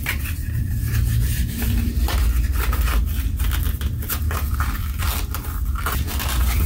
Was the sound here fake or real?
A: fake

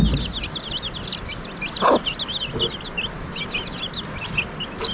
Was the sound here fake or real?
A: real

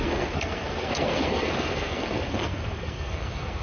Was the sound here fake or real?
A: fake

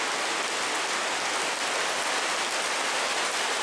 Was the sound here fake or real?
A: real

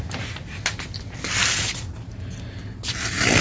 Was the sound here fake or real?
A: real